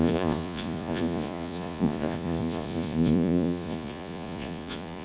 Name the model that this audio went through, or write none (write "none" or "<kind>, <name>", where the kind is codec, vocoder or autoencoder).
vocoder, Vocos